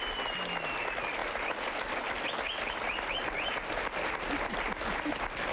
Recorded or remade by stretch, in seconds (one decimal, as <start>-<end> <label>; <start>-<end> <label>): 0.0-5.5 recorded